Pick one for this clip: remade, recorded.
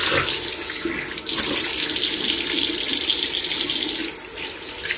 recorded